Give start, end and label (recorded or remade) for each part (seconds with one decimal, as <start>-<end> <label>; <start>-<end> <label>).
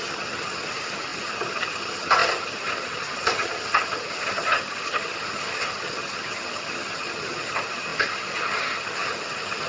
0.0-9.7 remade